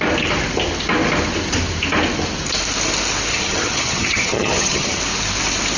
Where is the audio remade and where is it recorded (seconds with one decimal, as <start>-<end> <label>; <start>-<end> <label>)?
0.0-3.3 recorded; 3.3-5.0 remade; 5.0-5.8 recorded